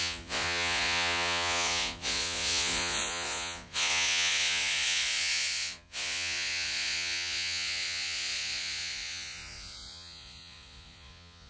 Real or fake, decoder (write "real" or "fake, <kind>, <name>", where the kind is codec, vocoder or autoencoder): fake, vocoder, Vocos